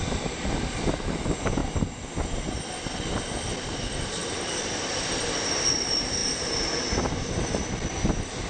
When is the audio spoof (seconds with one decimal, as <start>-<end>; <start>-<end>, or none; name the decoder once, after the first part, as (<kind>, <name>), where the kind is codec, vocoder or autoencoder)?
0.0-1.6 (vocoder, BigVGAN v2); 3.5-4.2; 5.7-6.2; 7.9-8.5